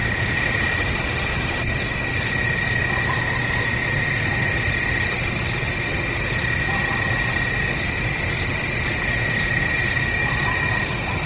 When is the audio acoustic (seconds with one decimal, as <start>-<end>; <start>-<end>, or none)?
0.0-11.3